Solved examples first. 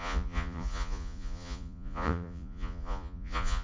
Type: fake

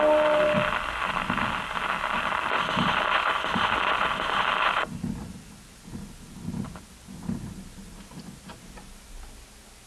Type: real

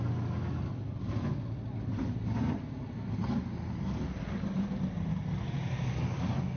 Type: real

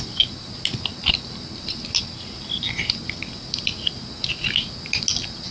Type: real